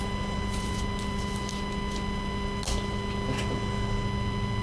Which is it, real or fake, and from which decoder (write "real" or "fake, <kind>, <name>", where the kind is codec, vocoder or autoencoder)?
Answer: real